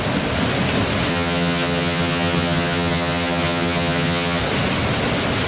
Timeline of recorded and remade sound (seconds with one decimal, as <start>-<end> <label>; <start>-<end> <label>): 0.0-1.1 recorded; 1.1-4.4 remade; 4.4-5.5 recorded